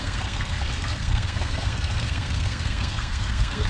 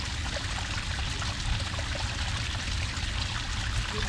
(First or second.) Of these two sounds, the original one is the second